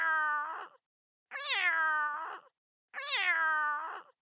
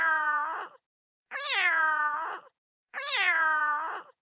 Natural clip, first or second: first